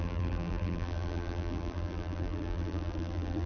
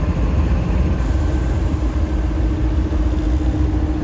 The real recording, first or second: second